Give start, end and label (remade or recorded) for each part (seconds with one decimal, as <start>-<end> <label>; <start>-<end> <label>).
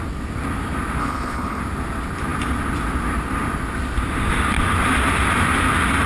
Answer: 0.0-1.0 recorded; 1.0-1.6 remade; 1.6-6.1 recorded